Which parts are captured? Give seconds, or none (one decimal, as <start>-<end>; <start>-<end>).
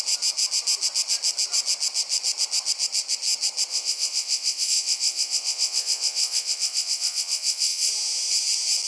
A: 0.0-3.7; 7.9-8.9